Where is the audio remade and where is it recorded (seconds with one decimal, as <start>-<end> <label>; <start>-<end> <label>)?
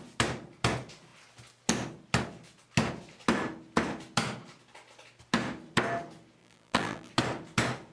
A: 0.0-6.4 recorded; 6.4-7.1 remade; 7.1-7.9 recorded